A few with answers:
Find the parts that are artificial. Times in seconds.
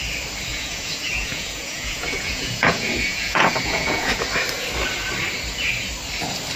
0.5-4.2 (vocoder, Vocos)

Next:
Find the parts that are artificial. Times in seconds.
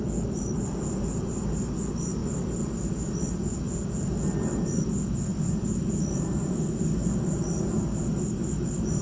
none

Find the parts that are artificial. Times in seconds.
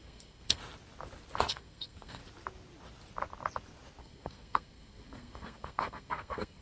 0.0-0.6 (codec, SNAC); 1.5-2.2; 4.0-6.6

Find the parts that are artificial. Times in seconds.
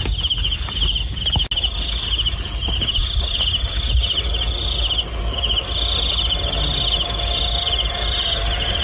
none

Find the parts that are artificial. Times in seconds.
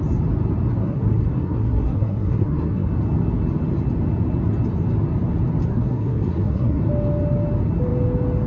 0.8-2.9 (codec, SNAC); 5.7-6.8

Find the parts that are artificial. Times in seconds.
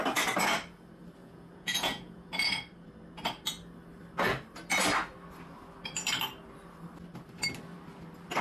1.2-2.3 (vocoder, Vocos)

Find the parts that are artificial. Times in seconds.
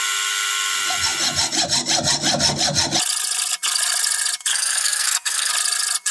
4.5-5.5 (codec, SNAC)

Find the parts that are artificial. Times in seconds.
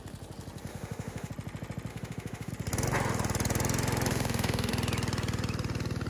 0.7-1.3 (autoencoder, DAC-VAE); 1.9-2.5; 4.1-4.7